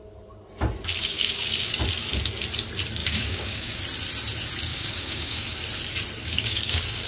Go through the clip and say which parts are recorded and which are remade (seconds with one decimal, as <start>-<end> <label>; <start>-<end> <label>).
0.0-1.0 recorded; 1.0-1.7 remade; 1.7-3.0 recorded; 3.0-3.8 remade; 3.8-4.7 recorded; 4.7-5.6 remade; 5.6-6.2 recorded; 6.2-7.1 remade